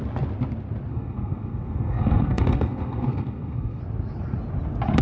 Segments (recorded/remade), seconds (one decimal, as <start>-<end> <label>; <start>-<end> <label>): 0.0-0.9 recorded; 0.9-3.8 remade; 3.8-5.0 recorded